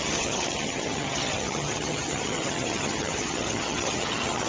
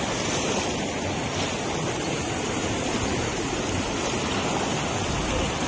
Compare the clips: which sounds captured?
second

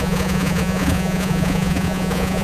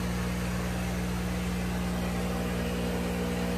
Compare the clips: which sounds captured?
second